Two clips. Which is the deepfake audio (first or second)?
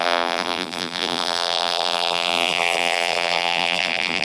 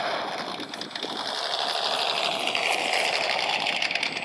first